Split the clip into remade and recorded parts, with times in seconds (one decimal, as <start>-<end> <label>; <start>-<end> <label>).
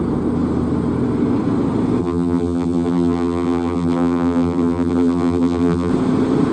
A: 0.0-2.0 recorded; 2.0-5.9 remade; 5.9-6.5 recorded